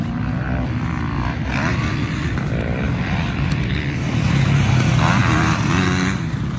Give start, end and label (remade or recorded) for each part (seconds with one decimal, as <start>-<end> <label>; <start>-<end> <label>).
0.0-1.5 recorded; 1.5-3.7 remade; 3.7-6.6 recorded